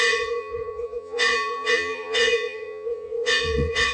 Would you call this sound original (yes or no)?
no